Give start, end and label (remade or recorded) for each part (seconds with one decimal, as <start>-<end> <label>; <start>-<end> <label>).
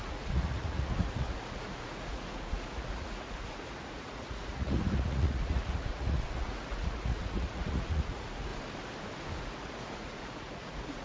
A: 0.0-8.5 remade; 8.5-9.4 recorded; 9.4-11.0 remade